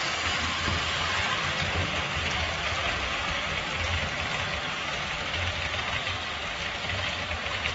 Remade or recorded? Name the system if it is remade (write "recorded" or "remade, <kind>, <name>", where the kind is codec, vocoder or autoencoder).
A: recorded